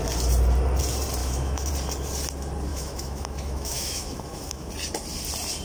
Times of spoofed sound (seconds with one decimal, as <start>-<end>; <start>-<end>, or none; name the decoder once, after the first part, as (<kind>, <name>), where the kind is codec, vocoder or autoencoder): 1.2-1.7 (autoencoder, DAC-VAE); 2.7-4.7